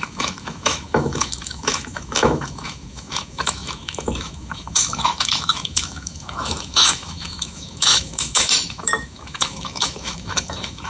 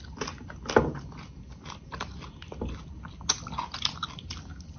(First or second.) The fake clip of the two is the first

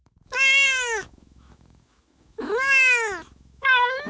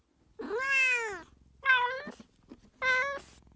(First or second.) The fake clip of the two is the first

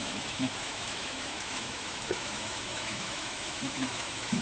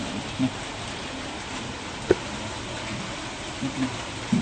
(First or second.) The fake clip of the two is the first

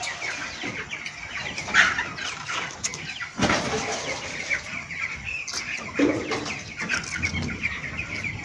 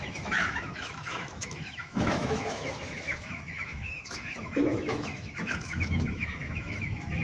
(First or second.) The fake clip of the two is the second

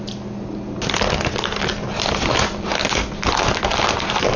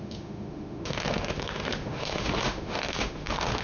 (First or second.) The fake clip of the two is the second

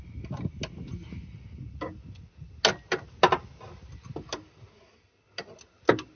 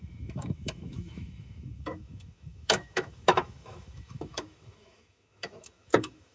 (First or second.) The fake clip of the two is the second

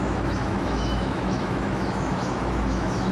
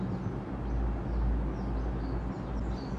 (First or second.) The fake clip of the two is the first